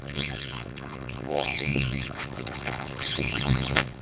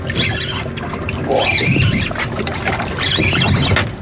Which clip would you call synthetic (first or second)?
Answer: first